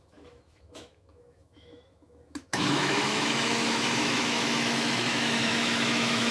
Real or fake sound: fake